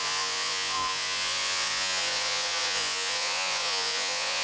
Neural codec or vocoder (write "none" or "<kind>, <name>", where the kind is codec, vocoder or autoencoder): vocoder, Vocos